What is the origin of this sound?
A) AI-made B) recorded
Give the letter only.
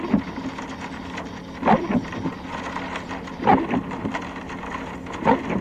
B